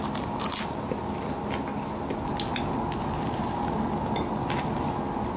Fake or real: real